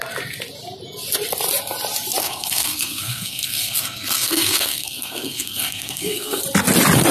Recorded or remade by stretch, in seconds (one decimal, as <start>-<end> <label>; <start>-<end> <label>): 0.0-2.2 recorded; 2.2-6.4 remade; 6.4-7.1 recorded